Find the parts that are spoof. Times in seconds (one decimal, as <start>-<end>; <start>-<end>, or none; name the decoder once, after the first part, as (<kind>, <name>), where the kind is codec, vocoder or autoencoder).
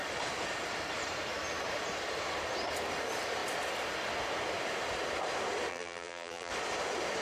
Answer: 5.7-6.5 (vocoder, BigVGAN v2)